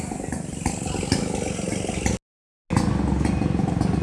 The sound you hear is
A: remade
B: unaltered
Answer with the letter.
B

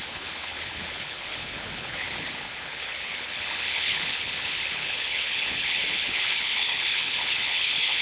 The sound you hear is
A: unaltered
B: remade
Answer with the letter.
B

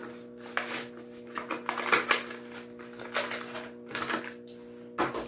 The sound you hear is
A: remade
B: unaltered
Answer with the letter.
B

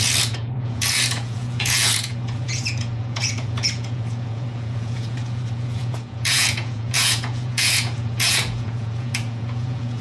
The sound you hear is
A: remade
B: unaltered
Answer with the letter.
A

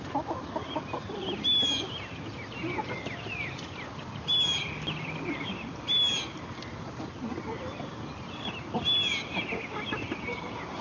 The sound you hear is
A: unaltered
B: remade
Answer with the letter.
A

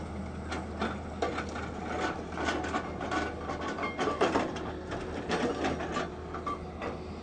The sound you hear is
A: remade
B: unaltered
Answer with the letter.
B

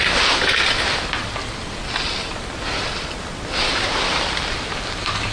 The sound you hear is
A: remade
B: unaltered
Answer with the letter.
B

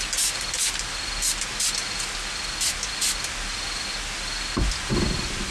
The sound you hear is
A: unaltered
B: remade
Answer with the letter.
A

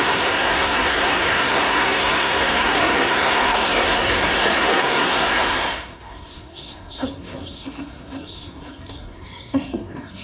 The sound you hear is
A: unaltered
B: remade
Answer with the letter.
B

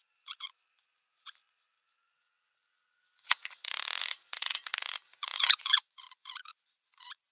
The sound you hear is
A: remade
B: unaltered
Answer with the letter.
A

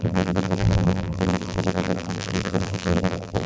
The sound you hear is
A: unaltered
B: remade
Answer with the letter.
B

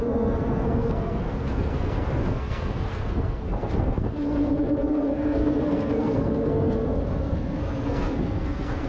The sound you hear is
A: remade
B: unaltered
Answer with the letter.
A